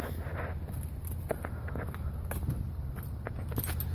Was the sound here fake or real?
real